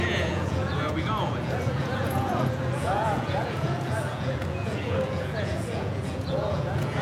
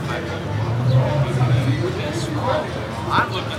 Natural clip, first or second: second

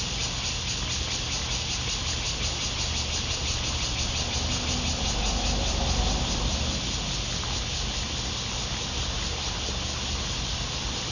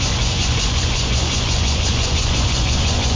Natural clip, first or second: first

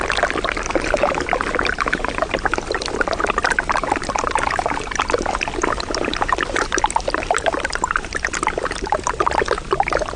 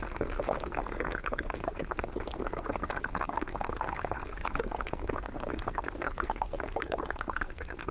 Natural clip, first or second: first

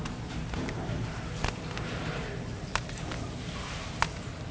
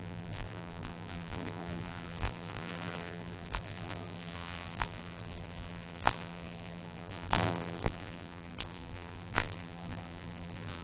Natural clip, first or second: first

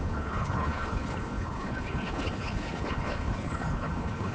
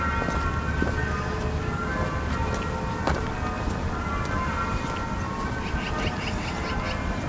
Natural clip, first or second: second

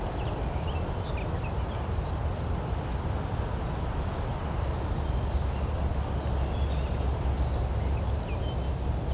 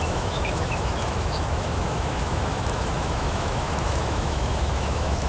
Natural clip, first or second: first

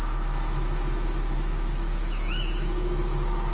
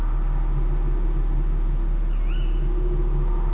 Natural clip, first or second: second